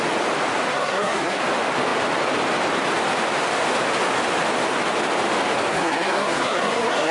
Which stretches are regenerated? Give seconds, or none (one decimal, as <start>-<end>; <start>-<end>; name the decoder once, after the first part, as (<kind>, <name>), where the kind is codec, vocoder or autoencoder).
0.7-1.4 (codec, SNAC); 5.7-7.1